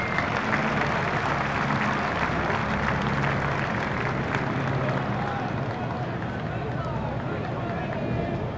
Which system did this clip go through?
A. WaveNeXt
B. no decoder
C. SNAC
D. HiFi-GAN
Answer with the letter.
B